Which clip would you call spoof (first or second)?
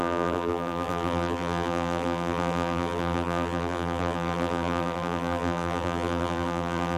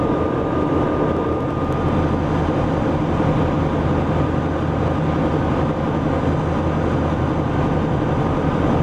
first